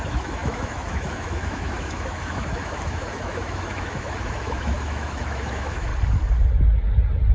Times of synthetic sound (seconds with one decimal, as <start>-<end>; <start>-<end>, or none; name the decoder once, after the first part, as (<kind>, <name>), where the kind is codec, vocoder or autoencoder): 0.0-5.9 (autoencoder, DAC-VAE)